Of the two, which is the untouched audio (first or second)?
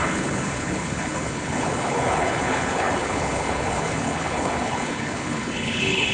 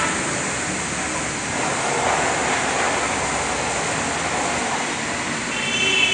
second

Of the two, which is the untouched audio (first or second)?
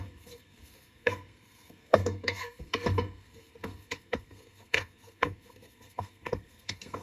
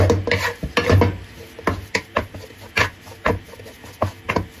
second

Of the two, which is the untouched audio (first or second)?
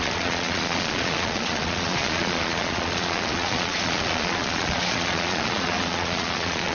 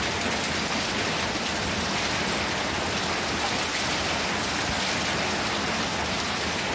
second